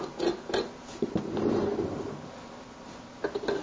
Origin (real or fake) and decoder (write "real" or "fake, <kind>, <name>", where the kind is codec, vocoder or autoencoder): real